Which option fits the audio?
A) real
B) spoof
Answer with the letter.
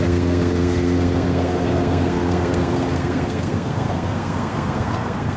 B